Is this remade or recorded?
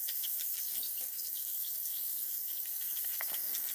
remade